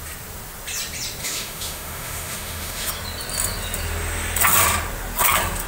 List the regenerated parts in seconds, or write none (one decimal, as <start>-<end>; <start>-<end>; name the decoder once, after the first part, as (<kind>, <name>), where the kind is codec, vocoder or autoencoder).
1.2-2.9 (autoencoder, DAC-VAE)